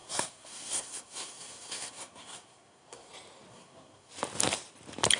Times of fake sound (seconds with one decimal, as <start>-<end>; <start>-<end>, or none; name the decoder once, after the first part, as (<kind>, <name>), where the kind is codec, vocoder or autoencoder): 0.0-3.1 (codec, SNAC); 3.5-4.1